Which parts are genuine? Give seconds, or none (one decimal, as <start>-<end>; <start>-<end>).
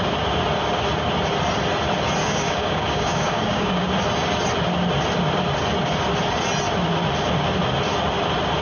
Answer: 0.0-2.2; 3.9-8.6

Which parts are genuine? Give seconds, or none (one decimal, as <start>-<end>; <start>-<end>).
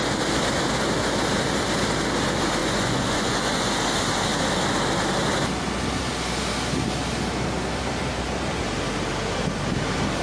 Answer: 0.0-2.6; 3.7-10.2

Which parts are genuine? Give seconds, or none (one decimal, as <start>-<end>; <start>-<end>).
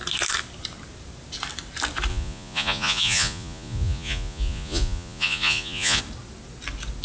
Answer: 0.0-2.1; 6.0-7.0